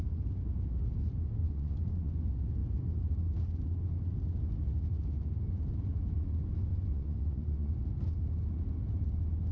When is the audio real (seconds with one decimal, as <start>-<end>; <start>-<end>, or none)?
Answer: 0.0-1.4; 2.1-6.7; 7.7-9.5